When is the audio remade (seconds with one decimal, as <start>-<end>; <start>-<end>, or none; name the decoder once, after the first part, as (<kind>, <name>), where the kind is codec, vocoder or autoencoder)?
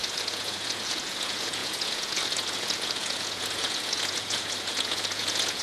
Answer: 0.0-5.6 (vocoder, Vocos)